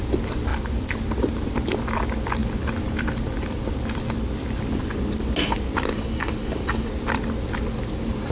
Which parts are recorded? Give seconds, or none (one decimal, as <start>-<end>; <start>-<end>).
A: 0.0-5.9; 6.9-8.3